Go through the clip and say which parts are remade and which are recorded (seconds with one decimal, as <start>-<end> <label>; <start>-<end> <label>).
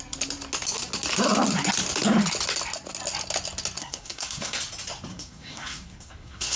0.0-3.8 recorded; 3.8-4.6 remade; 4.6-5.1 recorded; 5.1-6.6 remade